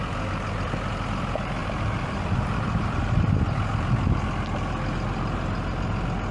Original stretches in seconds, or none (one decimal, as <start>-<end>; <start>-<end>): 0.0-1.6; 3.3-6.3